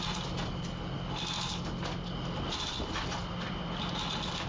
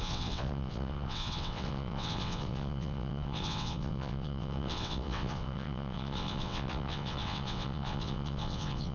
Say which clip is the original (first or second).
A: first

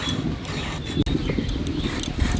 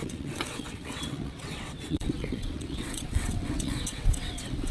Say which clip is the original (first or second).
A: first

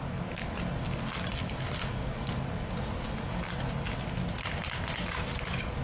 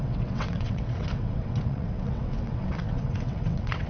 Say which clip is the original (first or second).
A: first